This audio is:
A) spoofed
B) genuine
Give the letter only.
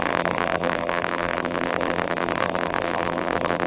A